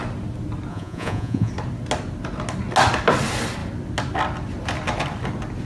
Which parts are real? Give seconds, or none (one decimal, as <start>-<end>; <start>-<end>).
0.0-0.7; 1.5-5.7